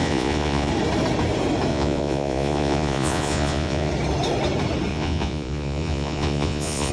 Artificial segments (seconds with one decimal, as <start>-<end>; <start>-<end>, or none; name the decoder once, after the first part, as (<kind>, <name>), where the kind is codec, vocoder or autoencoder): 0.0-0.7 (vocoder, Vocos); 1.7-3.9; 4.9-6.9